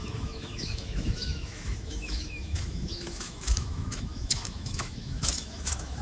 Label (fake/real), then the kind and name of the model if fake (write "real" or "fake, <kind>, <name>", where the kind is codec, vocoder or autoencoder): fake, autoencoder, DAC-VAE